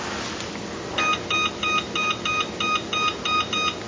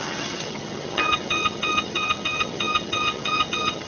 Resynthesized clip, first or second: second